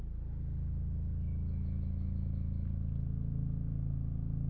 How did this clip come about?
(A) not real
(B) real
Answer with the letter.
B